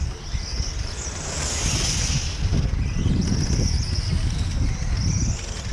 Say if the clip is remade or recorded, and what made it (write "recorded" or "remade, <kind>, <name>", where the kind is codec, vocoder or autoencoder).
recorded